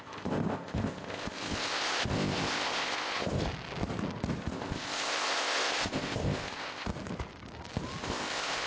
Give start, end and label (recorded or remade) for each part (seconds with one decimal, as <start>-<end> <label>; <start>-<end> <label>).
0.0-3.4 remade; 3.4-4.4 recorded; 4.4-6.9 remade; 6.9-8.0 recorded; 8.0-8.7 remade